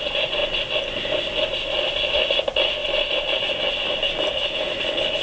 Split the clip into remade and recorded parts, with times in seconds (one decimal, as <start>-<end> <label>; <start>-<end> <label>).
0.0-5.2 recorded